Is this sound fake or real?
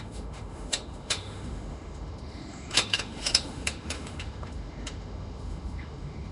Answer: fake